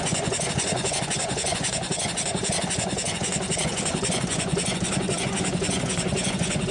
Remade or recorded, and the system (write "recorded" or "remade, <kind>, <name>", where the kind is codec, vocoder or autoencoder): remade, vocoder, Vocos